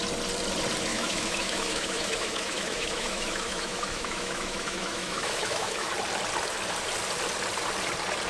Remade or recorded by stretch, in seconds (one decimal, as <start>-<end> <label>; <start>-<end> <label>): 0.0-0.9 recorded; 0.9-5.9 remade; 5.9-8.3 recorded